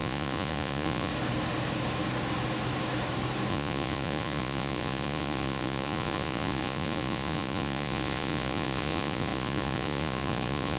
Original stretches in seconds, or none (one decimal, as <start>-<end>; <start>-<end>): 1.1-3.5